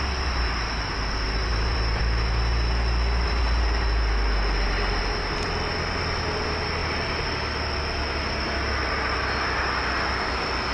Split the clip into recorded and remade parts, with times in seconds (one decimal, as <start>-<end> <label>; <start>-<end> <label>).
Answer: 0.0-1.5 recorded; 1.5-2.0 remade; 2.0-10.7 recorded